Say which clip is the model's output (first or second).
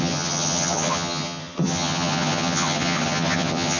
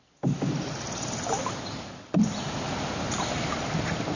first